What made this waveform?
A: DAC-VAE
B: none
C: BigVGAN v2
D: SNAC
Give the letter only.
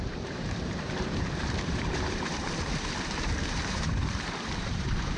C